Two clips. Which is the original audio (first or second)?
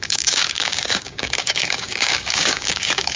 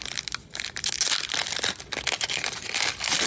second